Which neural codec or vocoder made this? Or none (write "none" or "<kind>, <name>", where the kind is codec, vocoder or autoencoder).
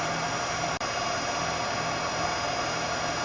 none